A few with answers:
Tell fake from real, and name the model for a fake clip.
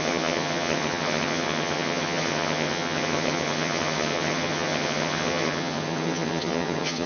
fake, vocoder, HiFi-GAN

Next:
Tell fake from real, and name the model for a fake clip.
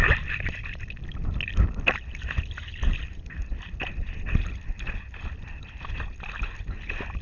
real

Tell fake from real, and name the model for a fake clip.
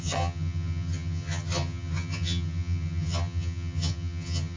fake, vocoder, HiFi-GAN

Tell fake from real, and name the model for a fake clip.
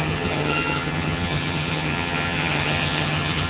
fake, vocoder, HiFi-GAN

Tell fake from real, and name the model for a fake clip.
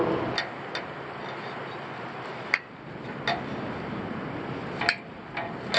real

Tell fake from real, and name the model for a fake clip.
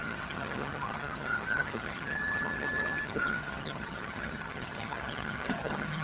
fake, vocoder, HiFi-GAN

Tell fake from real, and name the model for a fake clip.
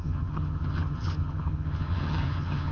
fake, vocoder, HiFi-GAN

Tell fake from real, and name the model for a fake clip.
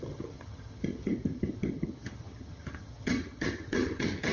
fake, vocoder, HiFi-GAN